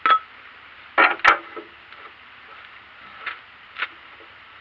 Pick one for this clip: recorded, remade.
recorded